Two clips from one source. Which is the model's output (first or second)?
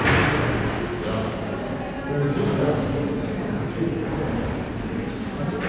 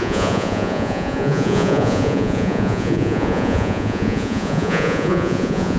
second